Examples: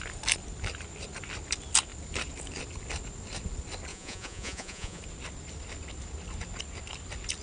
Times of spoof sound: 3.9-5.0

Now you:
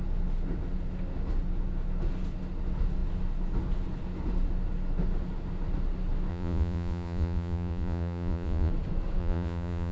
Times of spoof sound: 6.3-8.7; 9.2-9.9

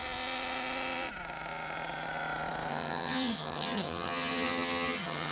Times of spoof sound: 2.7-5.3

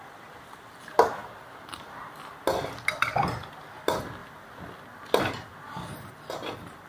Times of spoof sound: 1.2-2.1